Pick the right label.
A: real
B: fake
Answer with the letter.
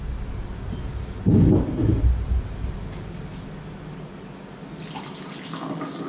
A